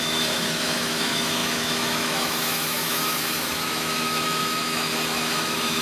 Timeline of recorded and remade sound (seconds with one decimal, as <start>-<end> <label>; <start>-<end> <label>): 0.0-5.8 remade